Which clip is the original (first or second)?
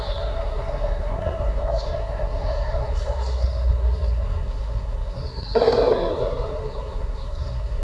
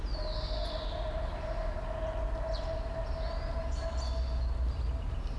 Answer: second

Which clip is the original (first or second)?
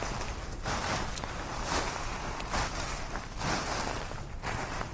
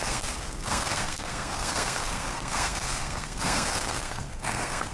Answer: first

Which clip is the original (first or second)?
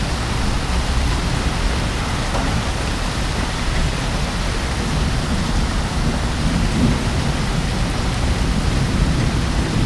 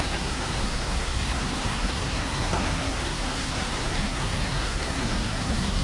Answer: first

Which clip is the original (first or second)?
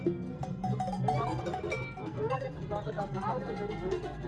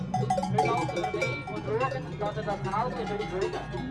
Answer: second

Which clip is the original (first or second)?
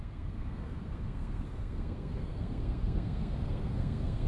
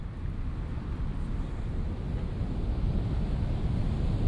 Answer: second